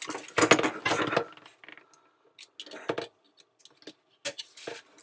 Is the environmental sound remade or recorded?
recorded